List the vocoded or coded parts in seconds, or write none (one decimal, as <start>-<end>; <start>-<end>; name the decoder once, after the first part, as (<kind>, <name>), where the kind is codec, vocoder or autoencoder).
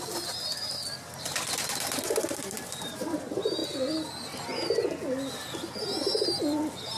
none